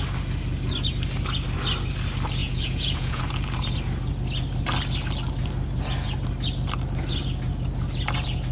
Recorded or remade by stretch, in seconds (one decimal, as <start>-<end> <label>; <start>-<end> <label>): 0.0-2.4 recorded; 2.4-3.2 remade; 3.2-8.5 recorded